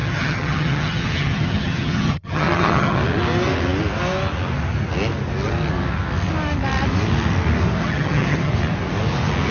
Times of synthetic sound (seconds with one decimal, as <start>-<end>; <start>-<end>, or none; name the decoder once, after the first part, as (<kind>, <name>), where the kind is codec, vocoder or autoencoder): 0.0-3.0 (vocoder, HiFi-GAN); 7.8-8.5